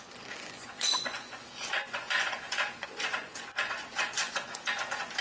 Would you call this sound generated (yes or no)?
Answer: yes